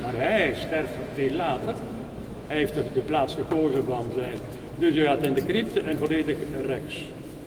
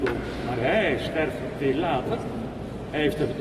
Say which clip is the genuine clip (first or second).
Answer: second